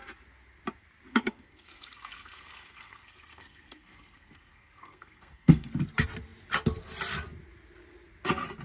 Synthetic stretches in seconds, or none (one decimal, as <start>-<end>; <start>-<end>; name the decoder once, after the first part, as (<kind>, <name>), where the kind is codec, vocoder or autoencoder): 1.1-5.7 (codec, SNAC)